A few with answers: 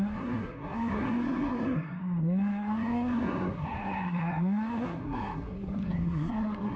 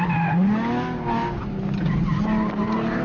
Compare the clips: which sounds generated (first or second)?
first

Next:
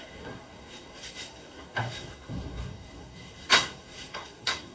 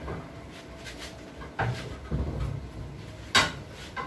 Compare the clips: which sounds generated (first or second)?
first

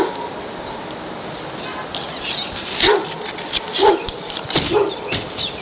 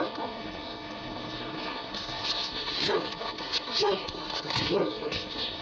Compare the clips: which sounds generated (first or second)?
second